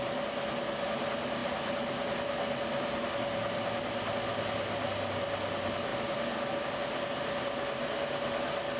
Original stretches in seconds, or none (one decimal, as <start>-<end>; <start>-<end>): 0.0-8.8